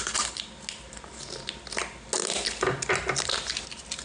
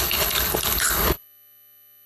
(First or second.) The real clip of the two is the first